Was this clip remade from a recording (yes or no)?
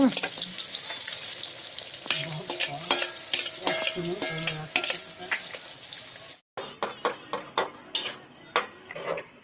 no